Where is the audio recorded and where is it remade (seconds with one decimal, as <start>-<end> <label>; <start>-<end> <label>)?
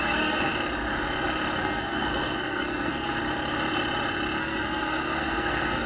0.0-0.5 remade; 0.5-1.6 recorded; 1.6-3.2 remade; 3.2-4.4 recorded; 4.4-5.9 remade